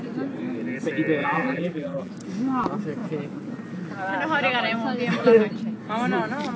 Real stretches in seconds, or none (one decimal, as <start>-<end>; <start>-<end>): 0.0-1.2; 2.1-6.6